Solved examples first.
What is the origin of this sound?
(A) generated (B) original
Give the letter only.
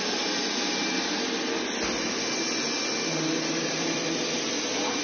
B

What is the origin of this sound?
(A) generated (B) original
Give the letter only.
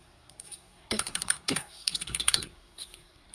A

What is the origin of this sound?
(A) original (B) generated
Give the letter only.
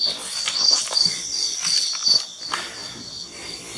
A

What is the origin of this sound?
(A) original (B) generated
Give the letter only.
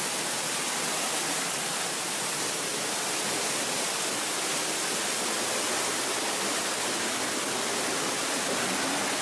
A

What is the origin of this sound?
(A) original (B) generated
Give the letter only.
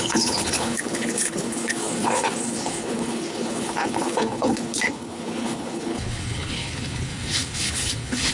B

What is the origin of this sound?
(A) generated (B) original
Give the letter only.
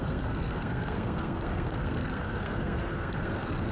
A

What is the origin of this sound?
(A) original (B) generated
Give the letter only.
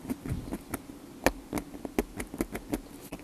A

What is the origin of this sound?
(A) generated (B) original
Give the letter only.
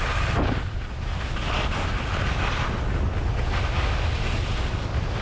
B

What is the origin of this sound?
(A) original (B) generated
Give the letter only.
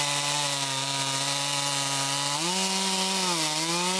A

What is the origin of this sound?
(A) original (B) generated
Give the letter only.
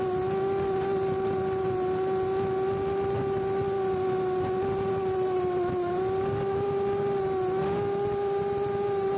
A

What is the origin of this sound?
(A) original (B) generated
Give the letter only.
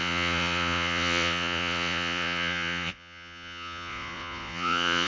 B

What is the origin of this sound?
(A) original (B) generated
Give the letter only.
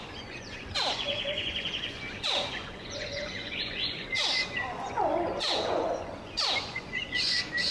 B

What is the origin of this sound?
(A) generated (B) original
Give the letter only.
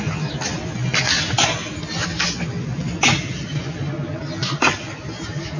B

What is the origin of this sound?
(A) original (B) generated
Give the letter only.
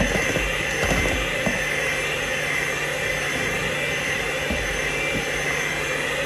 A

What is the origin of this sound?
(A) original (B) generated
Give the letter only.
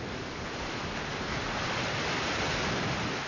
A